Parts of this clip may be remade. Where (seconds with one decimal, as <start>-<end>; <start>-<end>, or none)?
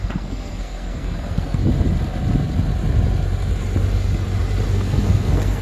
0.0-1.6; 4.7-5.6